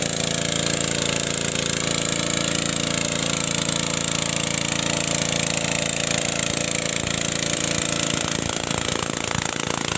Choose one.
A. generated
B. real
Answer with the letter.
B